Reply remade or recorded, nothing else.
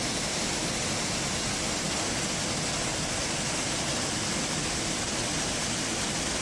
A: recorded